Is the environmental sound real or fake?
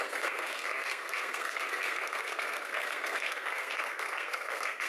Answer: fake